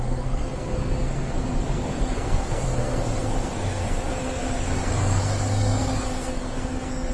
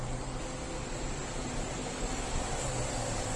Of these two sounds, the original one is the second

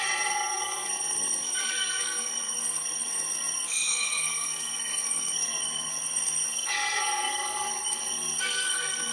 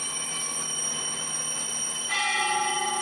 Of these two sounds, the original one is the second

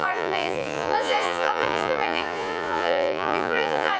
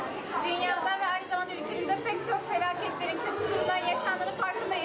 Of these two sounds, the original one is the second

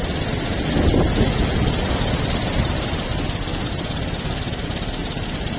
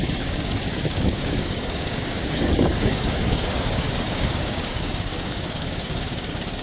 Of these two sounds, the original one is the first